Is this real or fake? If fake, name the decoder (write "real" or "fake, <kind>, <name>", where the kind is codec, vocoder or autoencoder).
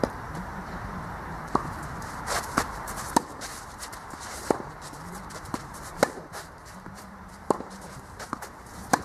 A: fake, vocoder, BigVGAN v2